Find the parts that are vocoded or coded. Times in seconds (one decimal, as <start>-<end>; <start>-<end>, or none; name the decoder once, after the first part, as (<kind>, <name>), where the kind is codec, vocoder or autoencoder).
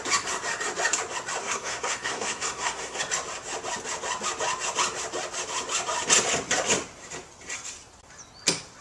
1.4-3.0 (codec, SNAC)